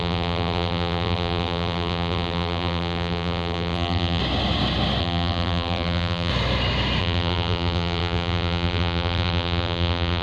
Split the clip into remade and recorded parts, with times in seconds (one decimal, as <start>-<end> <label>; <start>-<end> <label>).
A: 0.0-4.2 remade; 4.2-5.0 recorded; 5.0-6.3 remade; 6.3-7.0 recorded; 7.0-10.2 remade